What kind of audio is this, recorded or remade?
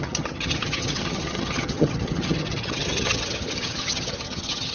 remade